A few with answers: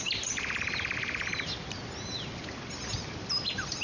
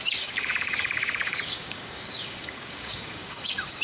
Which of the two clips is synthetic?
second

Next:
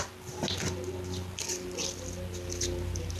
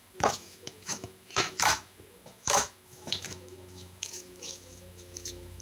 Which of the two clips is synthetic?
second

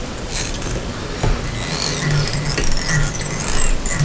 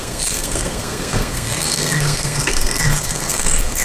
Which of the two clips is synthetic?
second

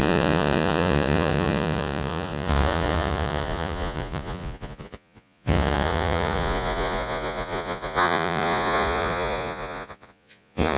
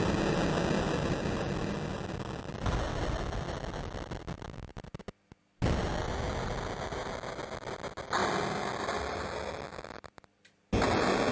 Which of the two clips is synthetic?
first